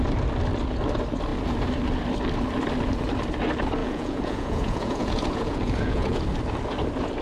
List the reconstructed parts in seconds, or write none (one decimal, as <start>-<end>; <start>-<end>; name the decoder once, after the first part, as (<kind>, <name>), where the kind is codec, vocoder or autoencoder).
3.8-6.2 (vocoder, Vocos)